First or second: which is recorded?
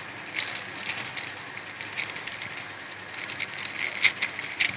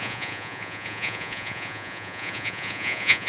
first